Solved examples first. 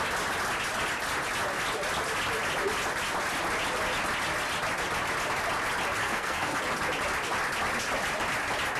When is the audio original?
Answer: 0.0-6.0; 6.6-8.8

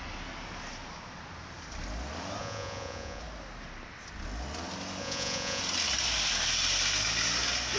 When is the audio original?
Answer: 0.0-2.4; 3.2-5.0; 5.6-7.8

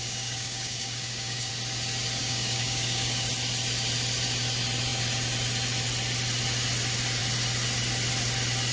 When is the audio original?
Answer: 1.5-2.2; 3.3-8.7

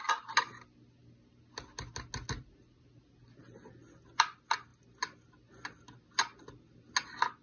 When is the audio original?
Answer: 0.0-7.4

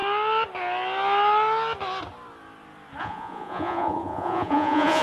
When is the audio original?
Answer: 0.0-3.0

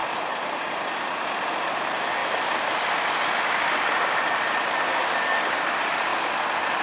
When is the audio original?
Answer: 0.6-6.8